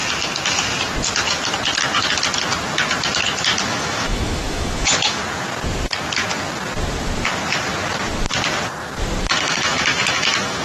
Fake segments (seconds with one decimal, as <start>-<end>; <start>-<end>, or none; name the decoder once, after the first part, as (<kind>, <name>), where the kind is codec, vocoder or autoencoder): 3.7-5.2 (autoencoder, DAC-VAE); 9.2-10.6